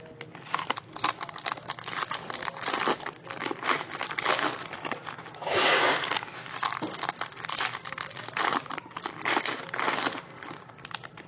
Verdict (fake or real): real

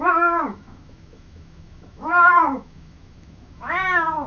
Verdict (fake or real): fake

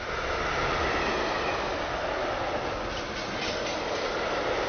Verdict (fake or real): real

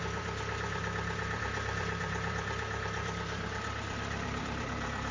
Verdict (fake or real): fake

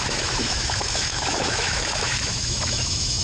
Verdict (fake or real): fake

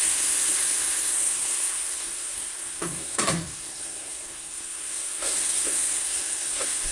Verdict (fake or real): fake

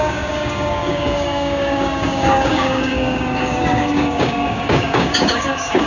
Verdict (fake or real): fake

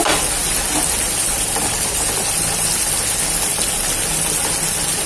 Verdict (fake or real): real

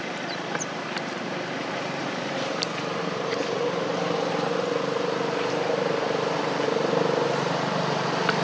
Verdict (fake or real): fake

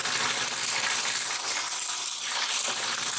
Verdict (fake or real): fake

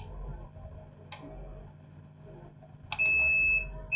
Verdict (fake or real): real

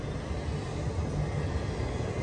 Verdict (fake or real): real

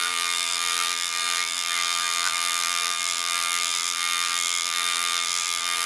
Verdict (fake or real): fake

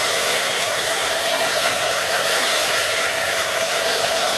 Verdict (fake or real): fake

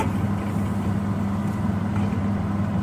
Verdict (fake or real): real